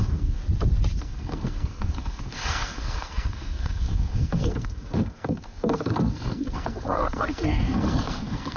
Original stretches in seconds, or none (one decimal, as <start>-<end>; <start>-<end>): 0.4-1.0